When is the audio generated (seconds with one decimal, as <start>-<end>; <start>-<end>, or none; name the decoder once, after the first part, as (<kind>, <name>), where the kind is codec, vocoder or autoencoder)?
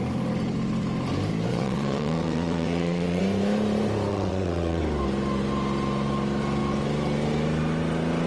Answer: 1.5-3.2 (vocoder, WaveNeXt); 4.1-4.8